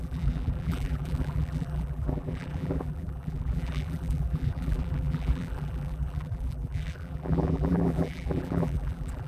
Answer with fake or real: fake